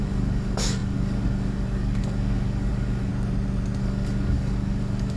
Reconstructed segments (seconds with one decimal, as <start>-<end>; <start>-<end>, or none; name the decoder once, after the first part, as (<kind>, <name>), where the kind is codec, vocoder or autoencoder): 0.0-3.1 (codec, DAC); 3.8-5.2